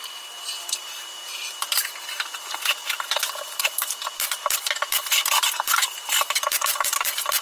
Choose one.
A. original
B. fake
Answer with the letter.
B